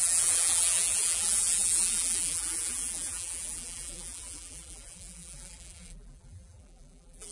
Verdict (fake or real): fake